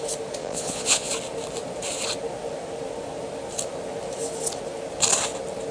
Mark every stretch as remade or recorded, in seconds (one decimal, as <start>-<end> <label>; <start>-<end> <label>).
0.0-0.4 recorded; 0.4-1.1 remade; 1.1-5.7 recorded

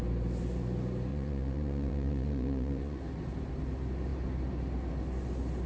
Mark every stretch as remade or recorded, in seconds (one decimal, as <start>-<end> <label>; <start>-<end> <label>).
0.0-1.1 recorded; 1.1-3.0 remade; 3.0-5.7 recorded

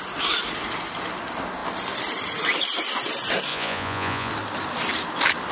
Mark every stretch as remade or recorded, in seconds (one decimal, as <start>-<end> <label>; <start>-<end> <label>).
0.0-3.5 recorded; 3.5-4.3 remade; 4.3-5.5 recorded

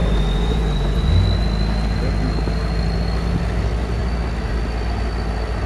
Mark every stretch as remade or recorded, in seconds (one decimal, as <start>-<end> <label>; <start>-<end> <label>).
0.0-1.1 remade; 1.1-5.7 recorded

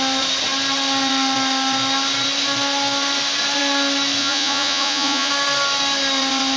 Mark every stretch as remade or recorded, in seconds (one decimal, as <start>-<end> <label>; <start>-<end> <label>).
0.0-4.2 recorded; 4.2-5.3 remade; 5.3-6.6 recorded

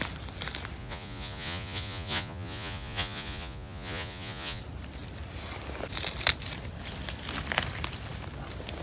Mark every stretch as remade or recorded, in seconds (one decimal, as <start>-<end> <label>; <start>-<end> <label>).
0.0-0.8 recorded; 0.8-4.6 remade; 4.6-8.8 recorded

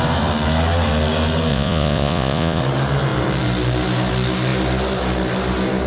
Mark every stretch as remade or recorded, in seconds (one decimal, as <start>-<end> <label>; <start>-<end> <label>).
0.0-1.5 recorded; 1.5-2.6 remade; 2.6-5.9 recorded

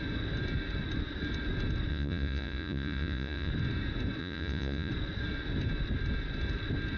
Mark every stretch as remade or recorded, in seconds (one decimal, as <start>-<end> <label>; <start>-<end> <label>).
0.0-1.9 recorded; 1.9-3.5 remade; 3.5-4.2 recorded; 4.2-4.9 remade; 4.9-7.0 recorded